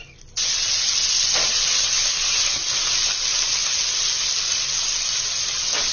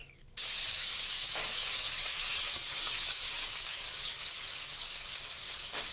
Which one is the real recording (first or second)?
first